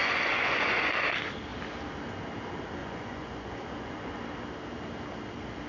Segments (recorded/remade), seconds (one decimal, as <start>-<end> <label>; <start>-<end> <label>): 0.0-0.9 remade; 0.9-2.8 recorded; 2.8-4.1 remade; 4.1-5.7 recorded